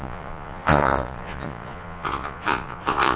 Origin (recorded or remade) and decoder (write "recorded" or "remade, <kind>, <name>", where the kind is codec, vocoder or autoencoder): remade, vocoder, Vocos